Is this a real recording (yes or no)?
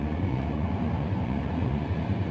no